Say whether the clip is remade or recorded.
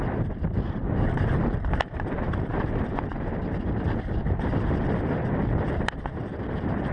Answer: remade